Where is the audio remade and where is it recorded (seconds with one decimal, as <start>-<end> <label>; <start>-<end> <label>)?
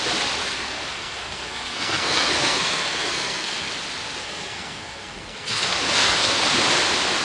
0.0-0.4 recorded; 0.4-3.7 remade; 3.7-4.2 recorded; 4.2-6.5 remade; 6.5-7.2 recorded